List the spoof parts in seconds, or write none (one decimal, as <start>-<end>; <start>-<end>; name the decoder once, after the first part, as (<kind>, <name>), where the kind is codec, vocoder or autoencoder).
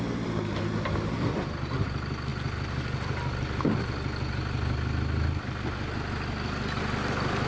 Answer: none